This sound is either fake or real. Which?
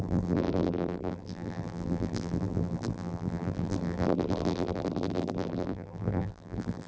fake